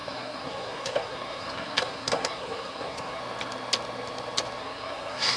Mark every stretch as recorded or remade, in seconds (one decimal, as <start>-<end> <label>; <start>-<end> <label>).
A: 0.0-3.2 remade; 3.2-4.6 recorded; 4.6-5.4 remade